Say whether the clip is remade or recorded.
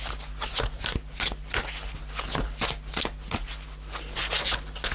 recorded